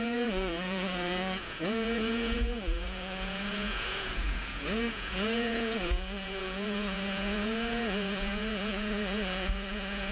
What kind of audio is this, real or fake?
fake